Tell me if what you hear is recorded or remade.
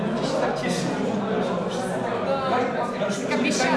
recorded